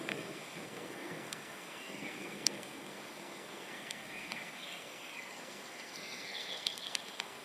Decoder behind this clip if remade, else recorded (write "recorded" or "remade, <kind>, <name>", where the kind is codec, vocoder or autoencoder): remade, codec, SNAC